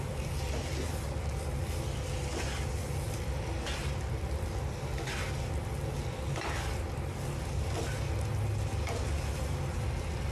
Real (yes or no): yes